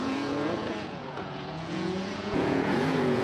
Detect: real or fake fake